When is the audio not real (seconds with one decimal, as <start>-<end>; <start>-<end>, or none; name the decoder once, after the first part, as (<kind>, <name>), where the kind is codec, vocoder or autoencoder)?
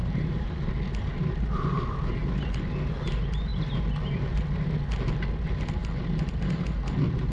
0.0-0.7 (vocoder, BigVGAN v2)